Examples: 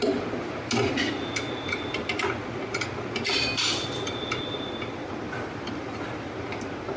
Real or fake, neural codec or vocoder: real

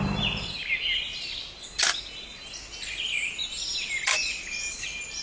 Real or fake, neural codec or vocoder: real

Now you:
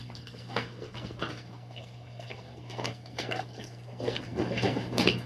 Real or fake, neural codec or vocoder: fake, codec, SNAC